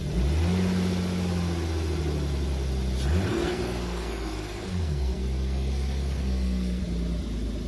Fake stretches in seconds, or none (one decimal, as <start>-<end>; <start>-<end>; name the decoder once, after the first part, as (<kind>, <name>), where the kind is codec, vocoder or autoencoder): 3.3-6.8 (codec, SNAC)